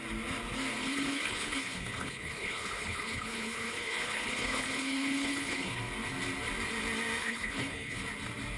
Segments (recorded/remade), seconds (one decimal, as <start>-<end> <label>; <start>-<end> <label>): 0.0-0.8 recorded; 0.8-5.8 remade; 5.8-7.2 recorded; 7.2-8.0 remade; 8.0-8.6 recorded